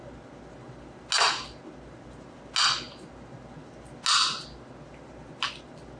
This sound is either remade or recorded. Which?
recorded